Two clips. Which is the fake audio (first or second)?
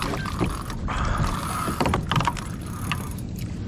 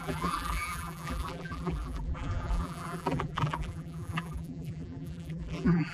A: second